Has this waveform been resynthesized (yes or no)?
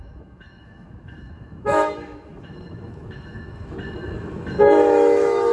yes